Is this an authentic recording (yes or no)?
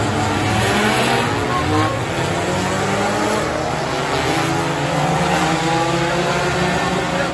yes